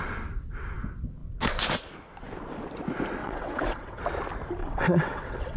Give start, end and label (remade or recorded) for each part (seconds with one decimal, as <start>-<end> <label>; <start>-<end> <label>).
0.0-3.2 recorded; 3.2-4.0 remade; 4.0-4.6 recorded; 4.6-5.6 remade